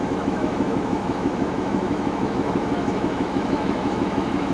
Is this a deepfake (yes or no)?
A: yes